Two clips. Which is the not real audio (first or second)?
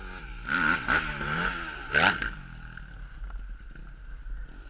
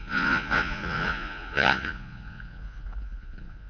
second